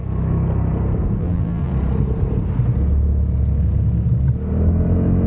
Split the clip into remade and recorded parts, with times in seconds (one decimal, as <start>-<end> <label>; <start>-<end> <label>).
0.0-1.2 recorded; 1.2-1.7 remade; 1.7-5.3 recorded